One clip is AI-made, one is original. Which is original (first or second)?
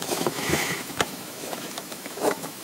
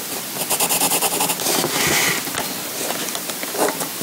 second